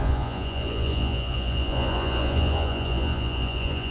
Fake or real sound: fake